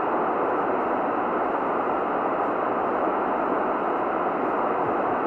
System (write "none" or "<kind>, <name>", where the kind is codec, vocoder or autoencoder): none